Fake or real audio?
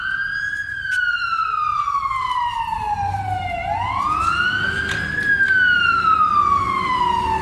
real